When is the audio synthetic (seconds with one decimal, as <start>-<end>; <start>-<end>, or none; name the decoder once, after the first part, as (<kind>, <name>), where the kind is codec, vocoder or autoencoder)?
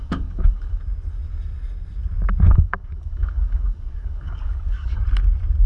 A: 0.0-0.8 (codec, DAC); 2.5-5.0